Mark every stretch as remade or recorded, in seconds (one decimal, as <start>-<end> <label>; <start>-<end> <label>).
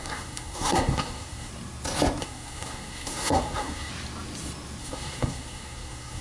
0.0-1.5 remade; 1.5-2.2 recorded; 2.2-3.9 remade; 3.9-4.8 recorded; 4.8-6.2 remade